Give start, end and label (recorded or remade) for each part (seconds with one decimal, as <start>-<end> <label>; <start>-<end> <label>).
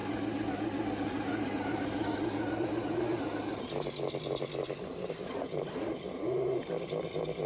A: 0.0-7.5 recorded